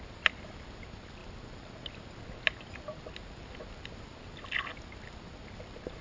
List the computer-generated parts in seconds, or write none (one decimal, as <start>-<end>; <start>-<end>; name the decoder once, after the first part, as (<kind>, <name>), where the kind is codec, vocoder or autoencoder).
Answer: none